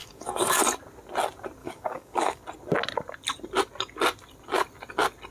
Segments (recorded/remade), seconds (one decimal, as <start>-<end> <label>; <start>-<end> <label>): 0.0-0.6 remade; 0.6-1.6 recorded; 1.6-2.4 remade; 2.4-5.3 recorded